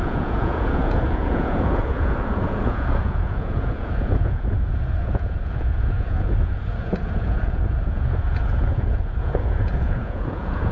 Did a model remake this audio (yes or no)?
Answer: yes